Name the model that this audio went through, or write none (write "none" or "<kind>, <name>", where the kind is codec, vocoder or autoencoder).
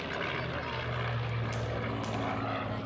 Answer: none